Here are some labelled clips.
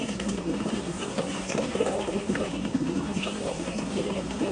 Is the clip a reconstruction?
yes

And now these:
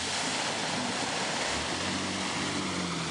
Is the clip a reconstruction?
no